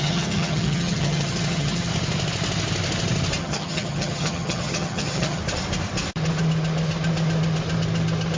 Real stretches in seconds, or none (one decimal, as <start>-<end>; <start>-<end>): 1.9-3.4; 5.4-8.4